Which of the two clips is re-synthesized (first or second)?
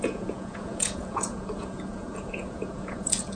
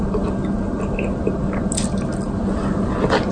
first